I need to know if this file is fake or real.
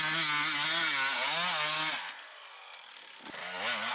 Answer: real